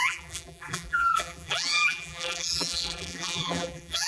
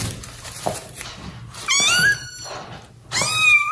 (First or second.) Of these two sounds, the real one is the second